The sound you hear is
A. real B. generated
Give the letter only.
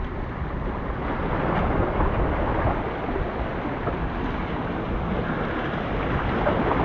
A